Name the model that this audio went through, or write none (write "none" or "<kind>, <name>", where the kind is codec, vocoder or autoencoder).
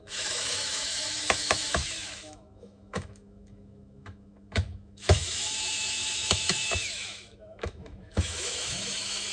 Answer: autoencoder, DAC-VAE